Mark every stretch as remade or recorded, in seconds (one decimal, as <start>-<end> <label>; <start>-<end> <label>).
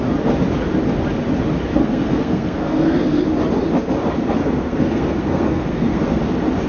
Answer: 0.0-1.8 recorded; 1.8-3.2 remade; 3.2-4.4 recorded; 4.4-6.2 remade; 6.2-6.7 recorded